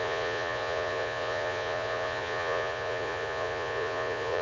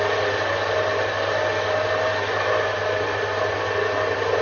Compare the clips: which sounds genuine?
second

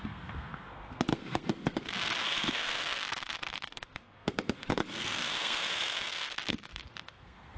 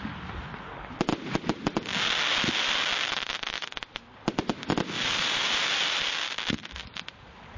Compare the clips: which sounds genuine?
second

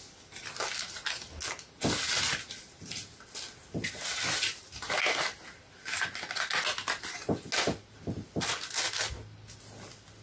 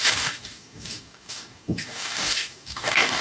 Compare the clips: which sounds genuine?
first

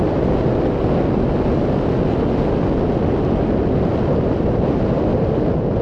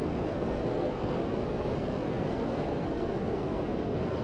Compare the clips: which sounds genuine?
first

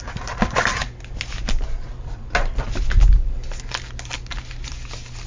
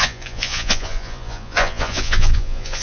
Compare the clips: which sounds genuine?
first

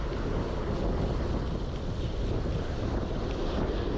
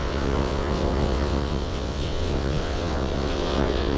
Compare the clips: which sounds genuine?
first